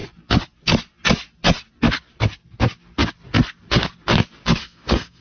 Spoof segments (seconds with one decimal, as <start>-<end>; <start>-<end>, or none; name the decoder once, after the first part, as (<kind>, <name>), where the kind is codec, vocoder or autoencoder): 4.6-5.2 (codec, SNAC)